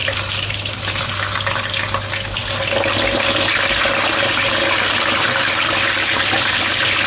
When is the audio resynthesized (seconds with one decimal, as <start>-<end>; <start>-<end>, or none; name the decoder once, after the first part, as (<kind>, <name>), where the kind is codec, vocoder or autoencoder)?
0.0-1.2 (vocoder, BigVGAN v2)